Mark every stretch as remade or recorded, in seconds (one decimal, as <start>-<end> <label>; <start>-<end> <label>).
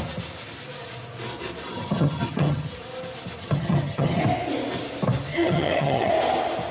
0.0-1.7 recorded; 1.7-2.8 remade; 2.8-3.4 recorded; 3.4-4.2 remade; 4.2-5.3 recorded; 5.3-6.1 remade; 6.1-6.7 recorded